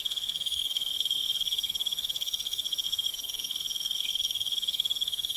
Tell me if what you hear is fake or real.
fake